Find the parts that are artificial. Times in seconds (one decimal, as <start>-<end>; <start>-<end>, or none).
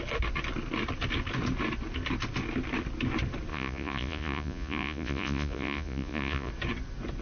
3.5-6.5